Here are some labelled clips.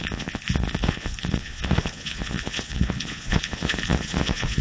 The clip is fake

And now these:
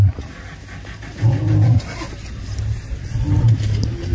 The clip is real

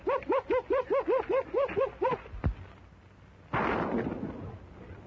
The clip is real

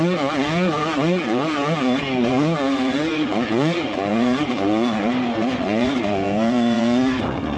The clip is fake